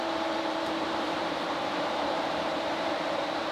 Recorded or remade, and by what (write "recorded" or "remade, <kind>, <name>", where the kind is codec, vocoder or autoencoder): remade, vocoder, BigVGAN v2